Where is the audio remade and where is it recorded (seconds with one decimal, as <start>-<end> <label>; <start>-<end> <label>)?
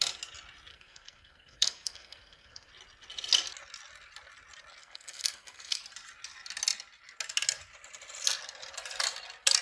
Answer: 0.0-0.7 recorded; 0.7-2.7 remade; 2.7-4.8 recorded; 4.8-5.8 remade; 5.8-9.6 recorded